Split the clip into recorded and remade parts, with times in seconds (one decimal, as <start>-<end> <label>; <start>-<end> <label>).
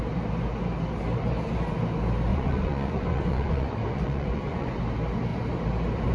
0.0-2.3 recorded; 2.3-4.8 remade; 4.8-6.1 recorded